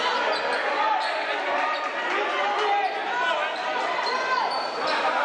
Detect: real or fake real